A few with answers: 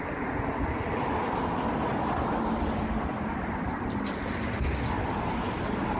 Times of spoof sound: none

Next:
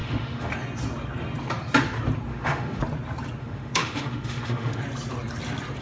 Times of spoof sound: 0.0-0.5 (autoencoder, DAC-VAE); 2.3-2.8; 3.4-4.8

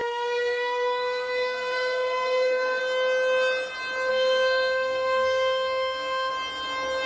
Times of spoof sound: 0.0-2.8 (codec, SNAC); 4.1-6.3

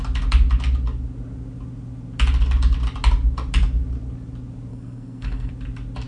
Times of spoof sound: 4.7-5.5 (codec, SNAC)

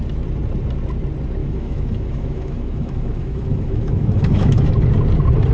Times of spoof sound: 1.4-4.7 (autoencoder, DAC-VAE)

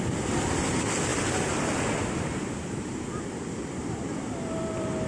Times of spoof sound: none